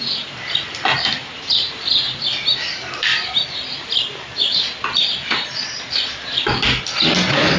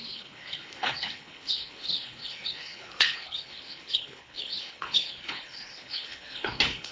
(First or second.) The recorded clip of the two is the first